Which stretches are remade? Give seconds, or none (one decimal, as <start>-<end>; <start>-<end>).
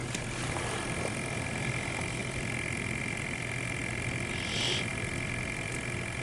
0.6-3.8; 4.3-6.2